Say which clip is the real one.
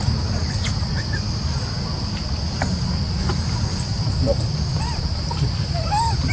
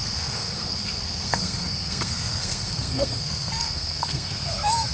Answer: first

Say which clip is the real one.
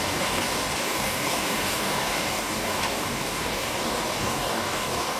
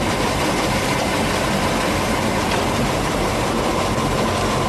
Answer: second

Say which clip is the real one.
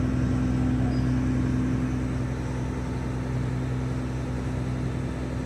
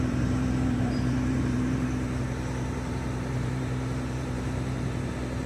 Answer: first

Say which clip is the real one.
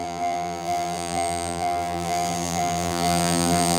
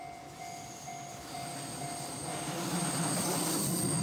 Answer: second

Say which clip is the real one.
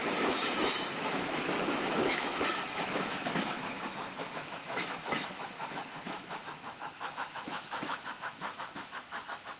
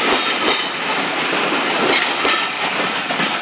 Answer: second